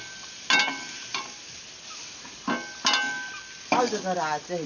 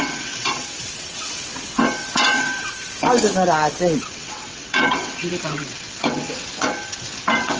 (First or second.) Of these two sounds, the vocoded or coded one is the second